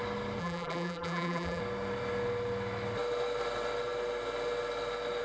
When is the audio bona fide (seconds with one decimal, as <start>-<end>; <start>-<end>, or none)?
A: 0.0-0.4; 1.6-5.2